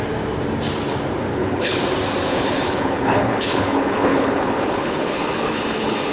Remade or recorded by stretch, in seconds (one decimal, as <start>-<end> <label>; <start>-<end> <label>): 0.0-1.3 recorded; 1.3-1.8 remade; 1.8-2.3 recorded; 2.3-6.1 remade